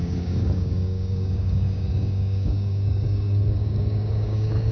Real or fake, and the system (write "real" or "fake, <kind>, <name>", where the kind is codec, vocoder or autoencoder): fake, codec, DAC